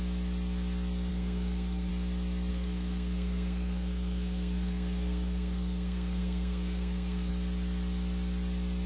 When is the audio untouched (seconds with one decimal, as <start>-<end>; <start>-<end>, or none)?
0.0-1.1; 1.9-2.5; 7.3-8.9